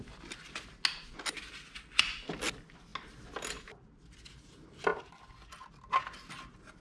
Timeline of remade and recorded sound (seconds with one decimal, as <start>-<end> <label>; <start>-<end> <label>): 0.0-6.8 recorded